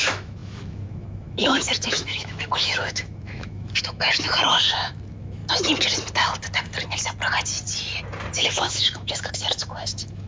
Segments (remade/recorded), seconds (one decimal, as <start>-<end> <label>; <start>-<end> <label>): 0.0-5.4 remade; 5.4-8.3 recorded; 8.3-10.3 remade